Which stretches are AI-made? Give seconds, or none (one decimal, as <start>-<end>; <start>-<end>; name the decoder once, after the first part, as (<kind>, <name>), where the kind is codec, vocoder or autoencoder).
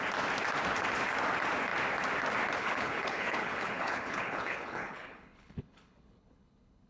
2.6-6.9 (codec, HILCodec)